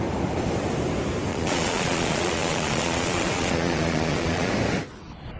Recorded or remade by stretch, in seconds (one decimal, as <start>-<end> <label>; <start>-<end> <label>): 0.0-1.3 recorded; 1.3-4.5 remade; 4.5-5.4 recorded